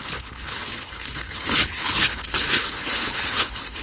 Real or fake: fake